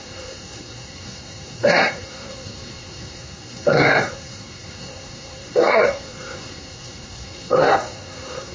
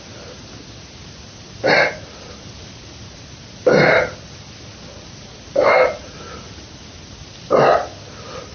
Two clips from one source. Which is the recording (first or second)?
second